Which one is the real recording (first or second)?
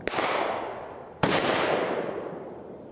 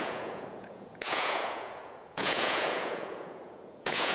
first